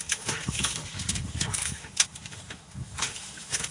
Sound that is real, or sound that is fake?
fake